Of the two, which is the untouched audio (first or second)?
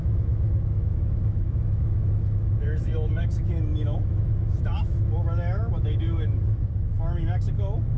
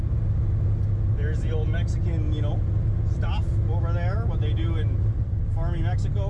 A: second